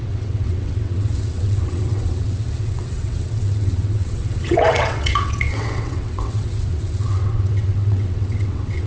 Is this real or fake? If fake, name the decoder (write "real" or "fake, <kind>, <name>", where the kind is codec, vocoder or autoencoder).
fake, vocoder, WaveNeXt